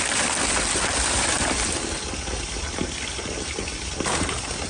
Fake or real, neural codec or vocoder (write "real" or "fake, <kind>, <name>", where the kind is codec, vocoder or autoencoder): real